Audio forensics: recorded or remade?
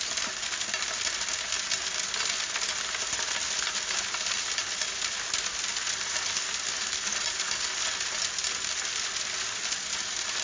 recorded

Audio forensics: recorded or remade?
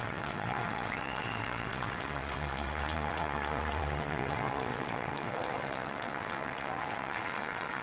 remade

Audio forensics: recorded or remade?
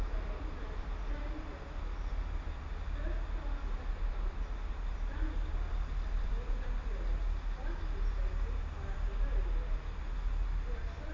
recorded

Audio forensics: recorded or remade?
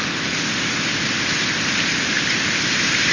recorded